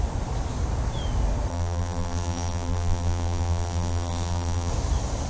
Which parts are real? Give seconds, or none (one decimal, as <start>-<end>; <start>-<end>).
0.0-1.5; 4.7-5.3